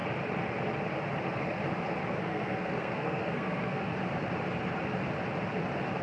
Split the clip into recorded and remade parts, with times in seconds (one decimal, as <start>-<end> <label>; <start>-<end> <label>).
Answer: 0.0-2.2 recorded; 2.2-3.9 remade; 3.9-6.0 recorded